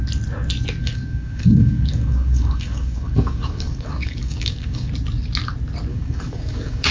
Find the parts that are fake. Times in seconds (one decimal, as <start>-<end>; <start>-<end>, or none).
0.8-4.9; 5.9-6.9